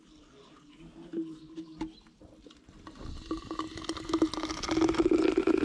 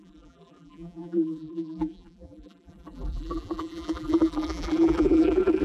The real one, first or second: first